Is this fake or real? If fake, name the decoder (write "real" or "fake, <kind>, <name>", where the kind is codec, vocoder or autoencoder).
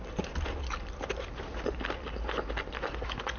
real